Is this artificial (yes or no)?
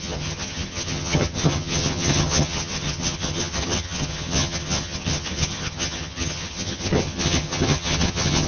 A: yes